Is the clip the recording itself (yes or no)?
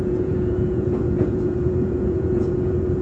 no